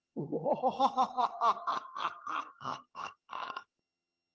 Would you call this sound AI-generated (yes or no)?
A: yes